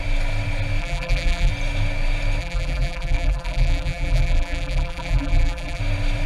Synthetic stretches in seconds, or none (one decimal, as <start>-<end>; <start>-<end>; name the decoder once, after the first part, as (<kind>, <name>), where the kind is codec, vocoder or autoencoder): 0.8-1.5 (vocoder, BigVGAN v2); 2.4-5.8